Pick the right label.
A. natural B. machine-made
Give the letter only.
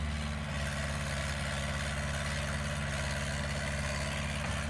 A